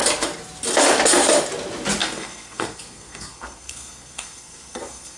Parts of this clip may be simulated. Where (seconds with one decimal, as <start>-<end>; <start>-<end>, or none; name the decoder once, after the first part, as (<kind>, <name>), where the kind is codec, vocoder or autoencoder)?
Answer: 2.0-5.2 (codec, SNAC)